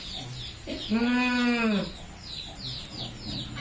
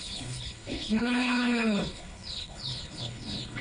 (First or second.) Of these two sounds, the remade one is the second